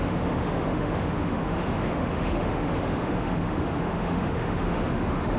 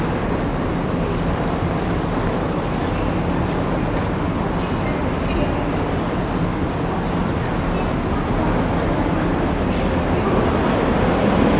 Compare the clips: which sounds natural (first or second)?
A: second